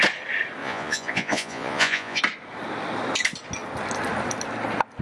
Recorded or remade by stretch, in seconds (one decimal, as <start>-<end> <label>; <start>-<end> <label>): 0.0-0.6 recorded; 0.6-2.2 remade; 2.2-5.0 recorded